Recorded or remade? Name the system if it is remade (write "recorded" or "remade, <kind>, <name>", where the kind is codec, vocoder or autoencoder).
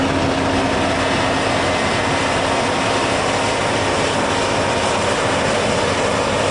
recorded